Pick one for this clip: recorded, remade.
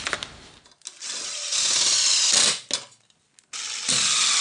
recorded